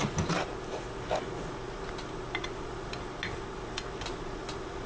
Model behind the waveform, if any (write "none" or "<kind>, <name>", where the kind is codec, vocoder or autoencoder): none